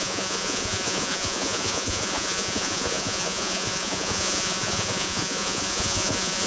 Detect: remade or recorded remade